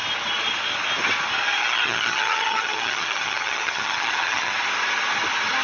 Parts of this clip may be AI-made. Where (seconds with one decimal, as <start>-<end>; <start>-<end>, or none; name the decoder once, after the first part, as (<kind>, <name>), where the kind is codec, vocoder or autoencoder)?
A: 1.6-4.5 (vocoder, HiFi-GAN)